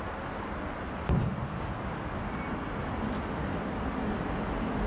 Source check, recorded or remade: recorded